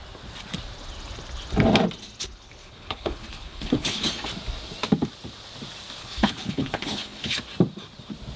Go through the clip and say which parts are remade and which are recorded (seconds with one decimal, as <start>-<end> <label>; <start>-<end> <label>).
0.0-2.2 recorded; 2.2-4.1 remade; 4.1-6.0 recorded; 6.0-7.4 remade; 7.4-8.4 recorded